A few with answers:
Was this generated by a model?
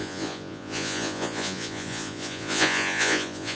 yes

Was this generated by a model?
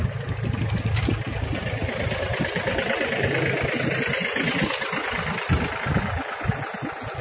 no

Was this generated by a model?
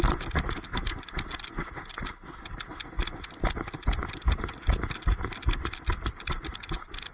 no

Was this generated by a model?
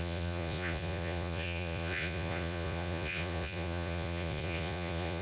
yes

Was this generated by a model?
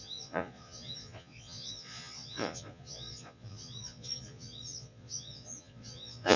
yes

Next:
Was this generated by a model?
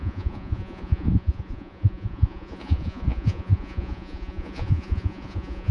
yes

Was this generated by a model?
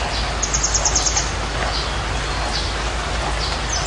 no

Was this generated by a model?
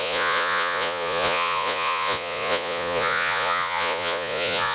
yes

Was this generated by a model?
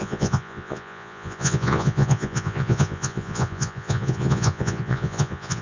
yes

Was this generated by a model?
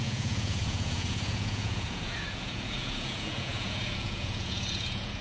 yes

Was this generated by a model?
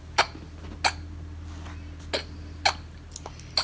no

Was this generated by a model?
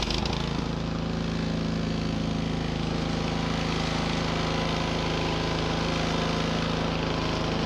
no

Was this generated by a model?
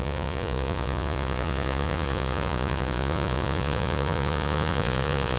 yes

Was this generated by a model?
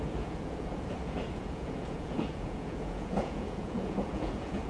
yes